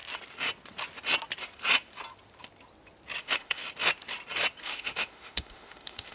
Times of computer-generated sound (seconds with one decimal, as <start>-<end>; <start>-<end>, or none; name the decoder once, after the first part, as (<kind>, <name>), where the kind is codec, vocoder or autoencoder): 3.2-3.6 (autoencoder, DAC-VAE); 4.6-6.1